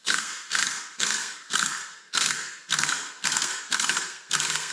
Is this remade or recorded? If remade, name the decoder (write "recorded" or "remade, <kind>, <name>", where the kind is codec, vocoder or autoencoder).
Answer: remade, codec, SNAC